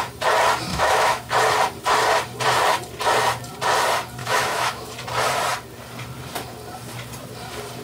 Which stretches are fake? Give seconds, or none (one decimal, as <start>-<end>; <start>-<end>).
0.7-1.3; 4.2-4.9